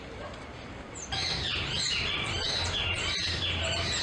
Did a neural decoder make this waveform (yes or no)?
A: yes